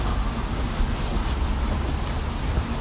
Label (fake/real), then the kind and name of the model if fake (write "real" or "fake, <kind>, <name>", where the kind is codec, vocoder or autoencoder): real